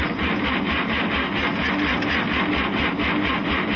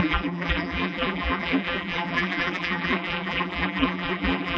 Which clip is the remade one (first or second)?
second